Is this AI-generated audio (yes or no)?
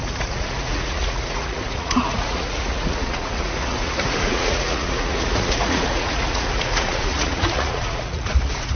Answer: yes